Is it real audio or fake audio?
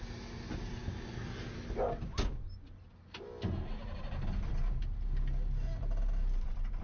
real